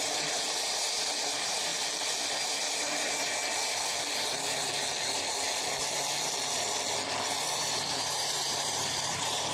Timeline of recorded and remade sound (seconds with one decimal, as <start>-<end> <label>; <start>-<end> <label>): 0.0-1.7 remade; 1.7-2.3 recorded; 2.3-3.4 remade; 3.4-7.5 recorded; 7.5-9.5 remade